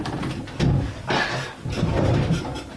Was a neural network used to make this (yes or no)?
no